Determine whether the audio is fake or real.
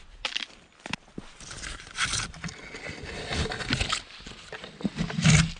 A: real